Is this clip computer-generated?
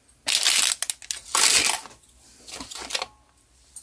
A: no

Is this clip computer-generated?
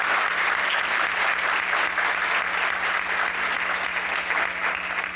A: no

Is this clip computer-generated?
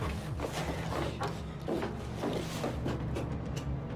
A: no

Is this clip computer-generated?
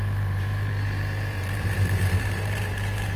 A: yes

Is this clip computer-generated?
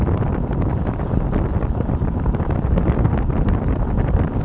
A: yes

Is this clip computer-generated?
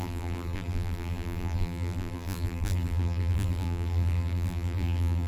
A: yes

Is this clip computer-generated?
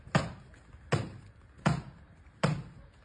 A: no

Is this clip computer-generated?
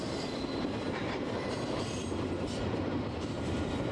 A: yes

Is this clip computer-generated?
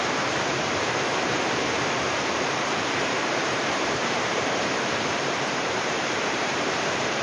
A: yes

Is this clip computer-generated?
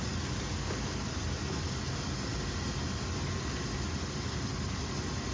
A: no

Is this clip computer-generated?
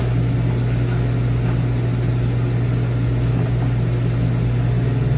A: no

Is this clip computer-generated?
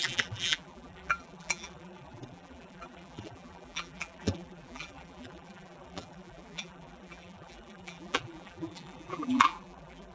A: yes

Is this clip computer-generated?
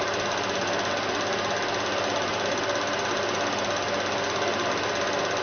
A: no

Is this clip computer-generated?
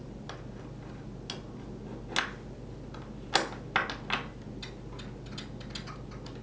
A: no